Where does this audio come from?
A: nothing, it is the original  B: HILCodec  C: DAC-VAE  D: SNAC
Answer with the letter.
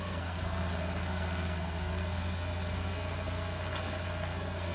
D